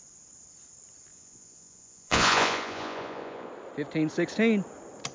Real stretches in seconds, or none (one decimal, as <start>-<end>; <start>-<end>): 0.0-1.1; 3.5-5.1